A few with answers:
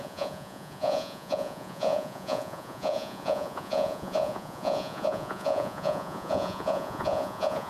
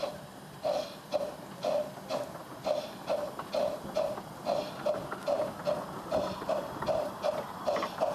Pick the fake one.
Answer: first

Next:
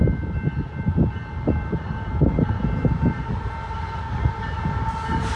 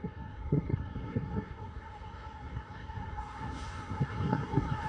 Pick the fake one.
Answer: second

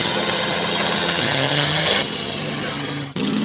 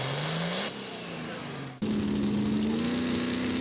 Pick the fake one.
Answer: first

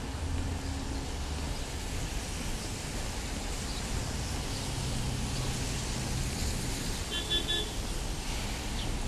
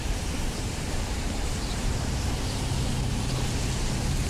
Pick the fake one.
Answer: second